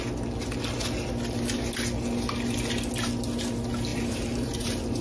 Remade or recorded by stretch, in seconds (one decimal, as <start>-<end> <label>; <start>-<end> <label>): 0.0-3.9 recorded; 3.9-5.0 remade